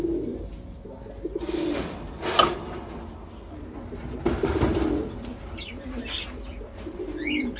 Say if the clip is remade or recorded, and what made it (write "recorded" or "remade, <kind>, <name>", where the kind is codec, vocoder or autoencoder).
recorded